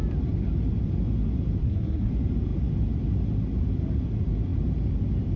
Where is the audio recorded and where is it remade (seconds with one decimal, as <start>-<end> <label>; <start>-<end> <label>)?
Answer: 0.0-1.6 recorded; 1.6-2.1 remade; 2.1-5.4 recorded